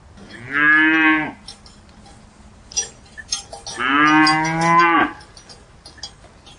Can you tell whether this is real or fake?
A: real